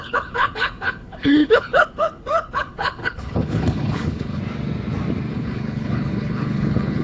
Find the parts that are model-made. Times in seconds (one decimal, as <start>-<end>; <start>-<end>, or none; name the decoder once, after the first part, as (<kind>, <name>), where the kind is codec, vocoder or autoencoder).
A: 0.0-4.4 (codec, HILCodec); 5.3-7.0